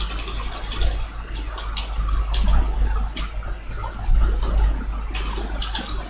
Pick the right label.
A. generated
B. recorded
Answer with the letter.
B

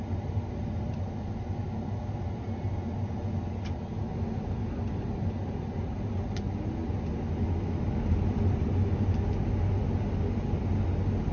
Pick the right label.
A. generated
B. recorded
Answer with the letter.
B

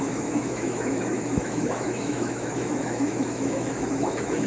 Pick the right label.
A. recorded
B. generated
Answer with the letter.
B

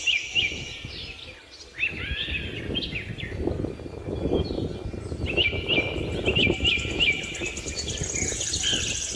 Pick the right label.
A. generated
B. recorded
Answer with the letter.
B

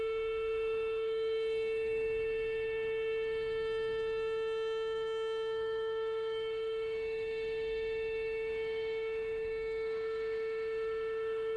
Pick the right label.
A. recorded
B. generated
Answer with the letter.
B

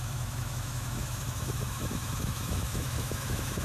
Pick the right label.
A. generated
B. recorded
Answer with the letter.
A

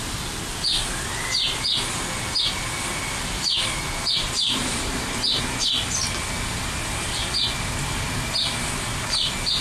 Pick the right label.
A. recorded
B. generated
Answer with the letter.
A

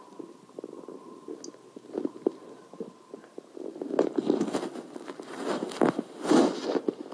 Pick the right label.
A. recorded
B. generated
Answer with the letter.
A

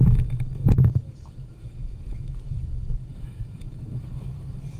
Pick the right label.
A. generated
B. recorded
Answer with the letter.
A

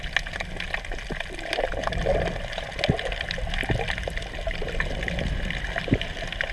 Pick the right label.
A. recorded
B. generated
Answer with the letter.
A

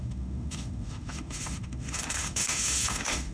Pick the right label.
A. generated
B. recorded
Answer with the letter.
A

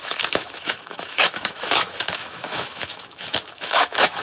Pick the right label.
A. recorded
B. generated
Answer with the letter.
B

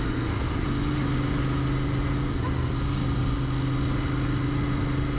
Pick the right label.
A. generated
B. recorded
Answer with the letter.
B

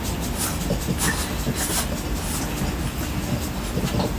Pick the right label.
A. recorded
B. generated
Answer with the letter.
A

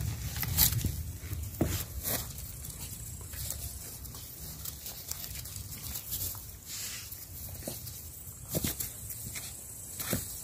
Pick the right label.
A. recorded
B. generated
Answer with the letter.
A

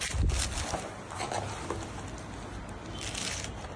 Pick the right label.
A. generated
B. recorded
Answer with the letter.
B